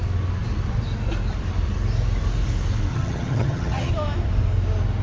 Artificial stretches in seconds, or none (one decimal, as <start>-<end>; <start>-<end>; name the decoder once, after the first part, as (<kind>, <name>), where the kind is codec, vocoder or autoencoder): 2.9-3.9 (vocoder, HiFi-GAN)